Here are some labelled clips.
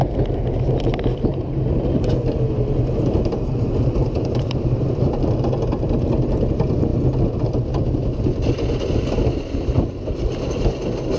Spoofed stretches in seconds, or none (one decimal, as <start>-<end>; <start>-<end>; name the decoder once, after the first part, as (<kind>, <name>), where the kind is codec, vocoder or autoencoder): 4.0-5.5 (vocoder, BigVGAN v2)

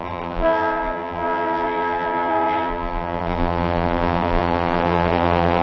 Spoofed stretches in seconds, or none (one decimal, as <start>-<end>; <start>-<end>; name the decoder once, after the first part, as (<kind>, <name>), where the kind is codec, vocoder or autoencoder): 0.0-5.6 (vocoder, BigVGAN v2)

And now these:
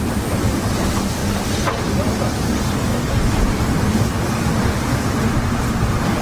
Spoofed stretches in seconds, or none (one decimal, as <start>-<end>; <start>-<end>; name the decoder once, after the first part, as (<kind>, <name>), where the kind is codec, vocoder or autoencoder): 4.5-5.3 (vocoder, BigVGAN v2)

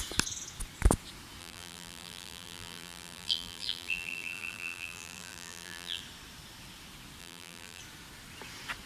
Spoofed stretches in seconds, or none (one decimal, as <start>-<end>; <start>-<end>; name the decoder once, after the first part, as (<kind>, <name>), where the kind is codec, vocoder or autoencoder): 1.4-6.0 (vocoder, BigVGAN v2); 7.2-7.8

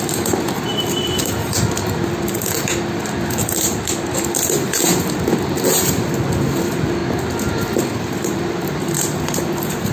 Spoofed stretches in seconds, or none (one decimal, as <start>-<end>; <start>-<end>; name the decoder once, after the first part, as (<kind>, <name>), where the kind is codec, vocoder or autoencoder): 0.0-7.0 (vocoder, BigVGAN v2); 7.5-9.9

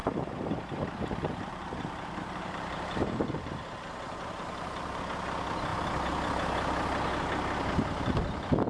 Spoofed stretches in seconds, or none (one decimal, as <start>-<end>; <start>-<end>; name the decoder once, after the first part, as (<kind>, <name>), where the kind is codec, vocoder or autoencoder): 0.0-5.0 (vocoder, BigVGAN v2)